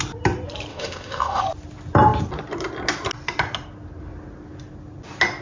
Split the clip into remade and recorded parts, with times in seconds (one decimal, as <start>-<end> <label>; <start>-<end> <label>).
0.0-0.7 recorded; 0.7-1.4 remade; 1.4-5.4 recorded